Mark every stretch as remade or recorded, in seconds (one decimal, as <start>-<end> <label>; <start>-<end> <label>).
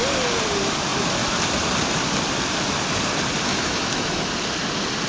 0.0-3.5 recorded; 3.5-4.3 remade; 4.3-5.1 recorded